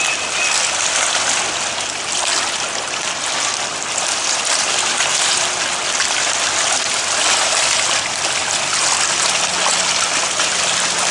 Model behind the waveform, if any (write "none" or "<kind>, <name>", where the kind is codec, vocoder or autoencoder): none